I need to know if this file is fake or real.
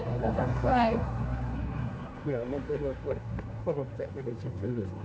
fake